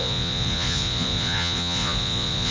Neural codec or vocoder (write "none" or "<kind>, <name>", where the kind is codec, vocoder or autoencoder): vocoder, Vocos